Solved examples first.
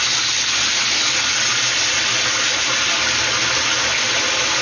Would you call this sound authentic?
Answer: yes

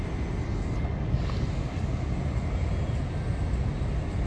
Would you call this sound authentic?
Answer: yes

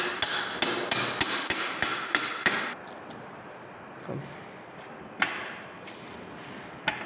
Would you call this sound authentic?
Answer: yes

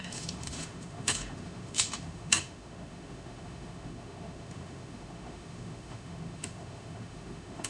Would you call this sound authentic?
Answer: no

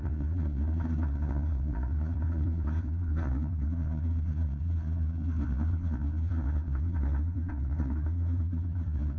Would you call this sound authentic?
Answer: no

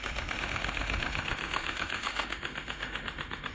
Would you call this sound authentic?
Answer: no